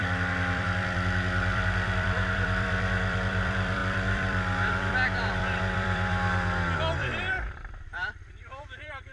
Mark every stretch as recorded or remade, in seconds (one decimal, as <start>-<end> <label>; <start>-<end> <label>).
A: 0.0-9.1 remade